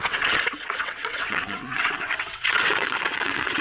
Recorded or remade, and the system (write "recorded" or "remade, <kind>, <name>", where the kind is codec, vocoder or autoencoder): remade, vocoder, WaveNeXt